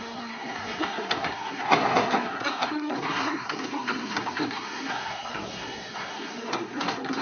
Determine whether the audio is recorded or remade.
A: remade